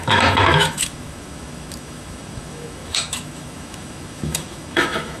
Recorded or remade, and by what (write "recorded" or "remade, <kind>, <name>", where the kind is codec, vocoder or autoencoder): remade, autoencoder, DAC-VAE